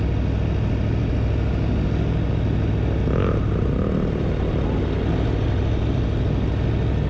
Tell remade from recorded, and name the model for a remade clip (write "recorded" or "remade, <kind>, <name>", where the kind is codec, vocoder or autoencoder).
recorded